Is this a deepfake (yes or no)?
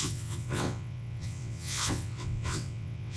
yes